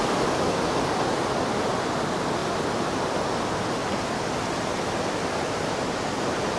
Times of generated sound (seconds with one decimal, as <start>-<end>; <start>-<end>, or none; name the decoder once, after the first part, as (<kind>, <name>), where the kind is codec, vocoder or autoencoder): none